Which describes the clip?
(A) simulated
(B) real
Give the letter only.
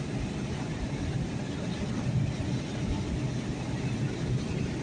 B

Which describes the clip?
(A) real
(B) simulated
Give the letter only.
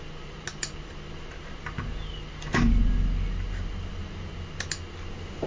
A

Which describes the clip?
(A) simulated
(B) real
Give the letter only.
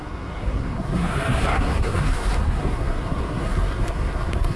A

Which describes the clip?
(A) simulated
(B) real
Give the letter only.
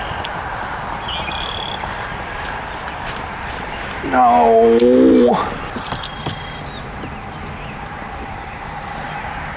B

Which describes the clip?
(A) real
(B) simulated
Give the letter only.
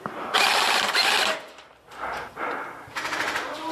A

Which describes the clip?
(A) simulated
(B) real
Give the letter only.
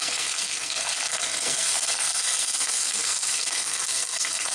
A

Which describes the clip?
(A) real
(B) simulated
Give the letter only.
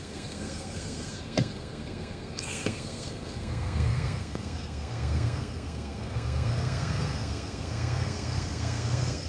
B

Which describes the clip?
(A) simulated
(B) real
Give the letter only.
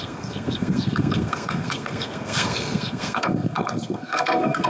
A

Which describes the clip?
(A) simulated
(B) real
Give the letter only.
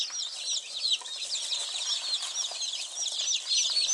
B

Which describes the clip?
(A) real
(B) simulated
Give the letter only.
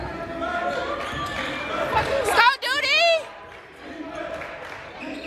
A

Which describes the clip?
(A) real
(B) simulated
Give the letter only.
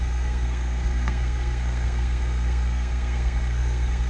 B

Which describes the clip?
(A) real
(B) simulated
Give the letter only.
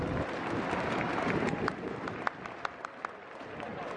A